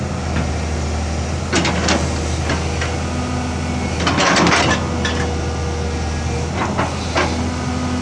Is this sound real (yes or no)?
yes